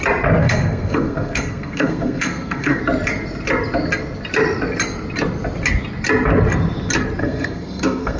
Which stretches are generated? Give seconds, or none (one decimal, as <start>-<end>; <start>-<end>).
0.4-2.8; 7.2-8.2